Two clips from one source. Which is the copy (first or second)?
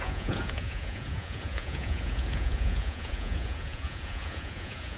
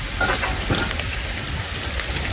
first